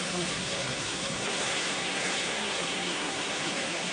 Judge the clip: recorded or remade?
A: remade